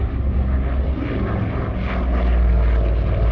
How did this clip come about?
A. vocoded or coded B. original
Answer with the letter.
B